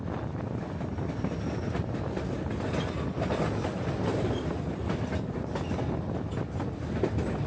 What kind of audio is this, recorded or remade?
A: recorded